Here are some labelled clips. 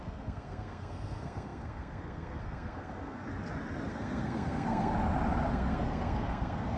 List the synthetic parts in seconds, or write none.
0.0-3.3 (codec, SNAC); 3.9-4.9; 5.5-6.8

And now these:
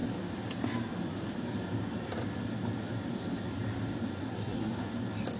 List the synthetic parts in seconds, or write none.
4.2-4.7 (codec, SNAC)

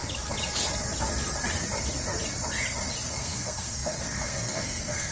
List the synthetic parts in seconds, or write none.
3.1-5.1 (codec, SNAC)